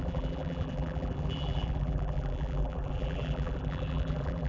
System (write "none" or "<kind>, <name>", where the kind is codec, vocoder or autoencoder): vocoder, BigVGAN v2